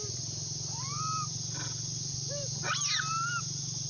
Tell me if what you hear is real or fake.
real